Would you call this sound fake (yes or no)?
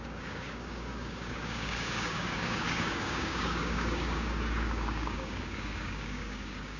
yes